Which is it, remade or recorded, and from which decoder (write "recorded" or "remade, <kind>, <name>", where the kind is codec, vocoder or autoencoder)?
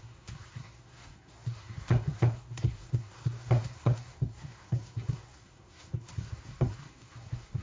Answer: remade, codec, SNAC